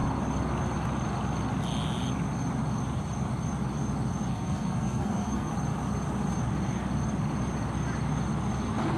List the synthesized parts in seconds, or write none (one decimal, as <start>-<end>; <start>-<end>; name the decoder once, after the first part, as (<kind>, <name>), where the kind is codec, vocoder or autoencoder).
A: 4.3-5.5 (codec, SNAC)